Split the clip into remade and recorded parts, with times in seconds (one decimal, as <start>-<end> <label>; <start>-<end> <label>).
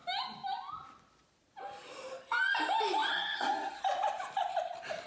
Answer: 0.0-3.1 recorded; 3.1-3.8 remade; 3.8-5.1 recorded